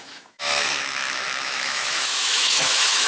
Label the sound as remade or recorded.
remade